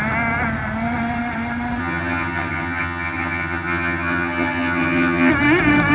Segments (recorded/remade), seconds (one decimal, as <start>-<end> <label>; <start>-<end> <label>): 0.0-1.8 recorded; 1.8-5.3 remade; 5.3-5.9 recorded